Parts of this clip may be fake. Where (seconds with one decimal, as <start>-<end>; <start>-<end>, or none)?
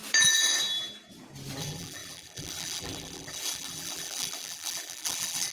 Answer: 1.6-5.5